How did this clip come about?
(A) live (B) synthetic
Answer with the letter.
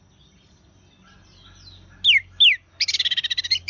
A